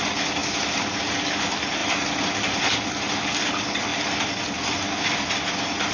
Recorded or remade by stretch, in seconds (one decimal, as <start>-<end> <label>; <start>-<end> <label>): 0.0-5.9 recorded